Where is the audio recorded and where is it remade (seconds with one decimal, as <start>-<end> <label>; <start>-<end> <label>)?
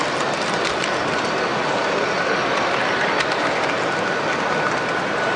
0.0-5.4 recorded